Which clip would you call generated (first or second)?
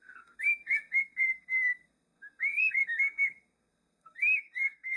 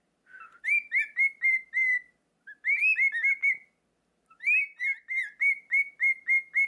first